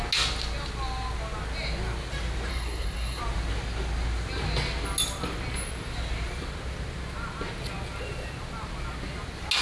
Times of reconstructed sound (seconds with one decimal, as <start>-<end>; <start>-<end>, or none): 2.5-3.2